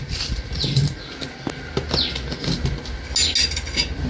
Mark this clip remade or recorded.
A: recorded